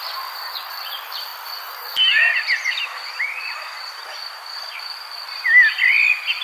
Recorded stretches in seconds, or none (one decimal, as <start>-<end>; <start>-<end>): 1.3-2.7

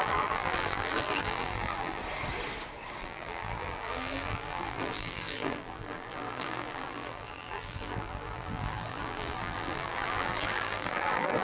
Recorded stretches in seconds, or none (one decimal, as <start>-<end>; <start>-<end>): 2.0-3.0

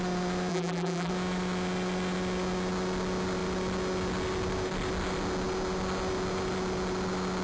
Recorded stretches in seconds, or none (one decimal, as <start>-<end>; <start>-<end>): 0.0-0.5; 1.1-7.4